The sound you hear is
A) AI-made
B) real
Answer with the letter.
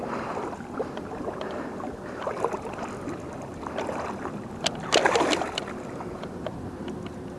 B